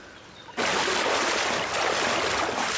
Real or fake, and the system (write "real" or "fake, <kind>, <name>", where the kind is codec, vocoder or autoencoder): real